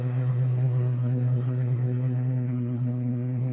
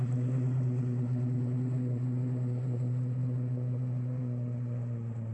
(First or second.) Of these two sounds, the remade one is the first